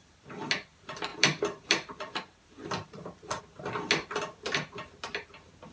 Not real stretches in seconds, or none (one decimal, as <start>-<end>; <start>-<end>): 1.1-3.4